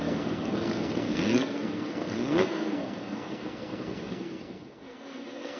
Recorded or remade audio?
remade